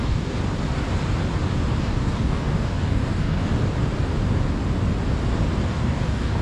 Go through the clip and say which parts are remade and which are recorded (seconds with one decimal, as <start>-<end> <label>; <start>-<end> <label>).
0.0-0.4 remade; 0.4-1.8 recorded; 1.8-3.5 remade; 3.5-5.6 recorded; 5.6-6.4 remade